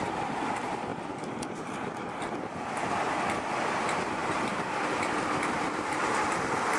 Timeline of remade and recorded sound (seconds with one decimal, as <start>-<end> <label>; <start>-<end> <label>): 0.0-6.8 recorded